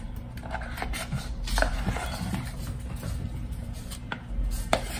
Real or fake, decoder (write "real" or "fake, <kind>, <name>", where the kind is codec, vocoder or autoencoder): fake, vocoder, BigVGAN v2